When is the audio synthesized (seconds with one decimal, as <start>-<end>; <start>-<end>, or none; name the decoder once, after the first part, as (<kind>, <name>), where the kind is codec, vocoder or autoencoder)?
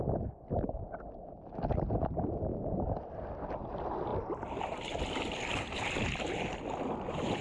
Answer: 2.5-3.1 (vocoder, BigVGAN v2); 4.1-6.6